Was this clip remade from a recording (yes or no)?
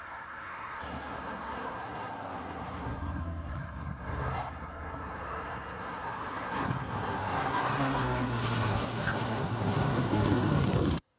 yes